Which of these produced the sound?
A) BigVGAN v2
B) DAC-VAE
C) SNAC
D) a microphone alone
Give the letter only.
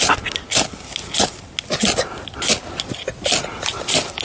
D